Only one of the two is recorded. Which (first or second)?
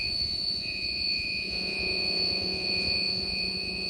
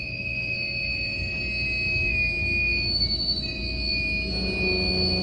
second